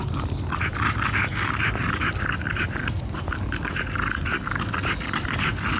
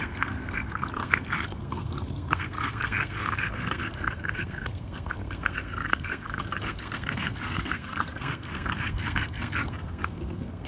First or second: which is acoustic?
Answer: first